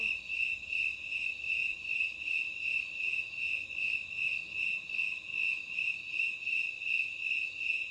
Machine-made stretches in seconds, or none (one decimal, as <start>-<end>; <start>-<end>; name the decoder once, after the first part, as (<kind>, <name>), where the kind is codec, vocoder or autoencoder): none